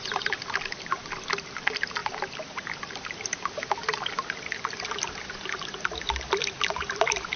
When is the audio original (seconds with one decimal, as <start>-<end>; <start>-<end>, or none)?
0.0-7.4